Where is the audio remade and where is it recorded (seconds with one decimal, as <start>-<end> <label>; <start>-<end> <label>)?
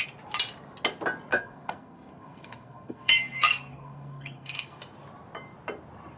0.0-1.3 recorded; 1.3-4.8 remade; 4.8-6.2 recorded